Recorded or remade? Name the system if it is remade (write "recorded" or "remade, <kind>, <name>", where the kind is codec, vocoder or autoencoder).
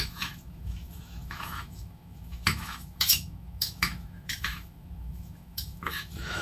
remade, autoencoder, DAC-VAE